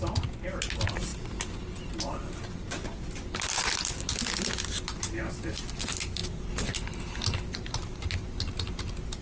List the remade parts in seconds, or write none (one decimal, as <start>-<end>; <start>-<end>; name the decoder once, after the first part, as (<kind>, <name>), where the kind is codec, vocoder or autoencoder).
none